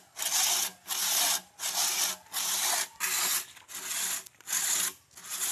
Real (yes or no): yes